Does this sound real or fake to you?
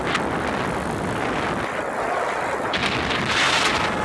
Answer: real